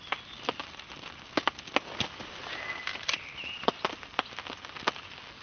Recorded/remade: recorded